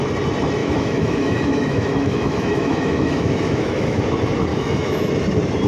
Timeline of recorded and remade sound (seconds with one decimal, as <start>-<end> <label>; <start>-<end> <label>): 0.0-0.6 recorded; 0.6-4.0 remade; 4.0-4.5 recorded; 4.5-5.1 remade; 5.1-5.7 recorded